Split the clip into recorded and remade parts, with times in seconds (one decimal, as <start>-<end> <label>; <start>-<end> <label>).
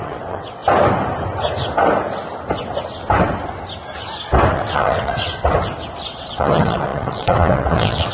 0.0-0.6 remade; 0.6-4.5 recorded; 4.5-5.3 remade; 5.3-6.1 recorded; 6.1-8.1 remade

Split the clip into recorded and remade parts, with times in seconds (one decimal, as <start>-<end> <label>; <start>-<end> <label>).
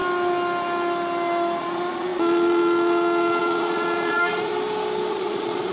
0.0-1.6 recorded; 1.6-4.5 remade; 4.5-5.1 recorded; 5.1-5.7 remade